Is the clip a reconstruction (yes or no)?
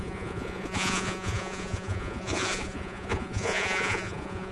yes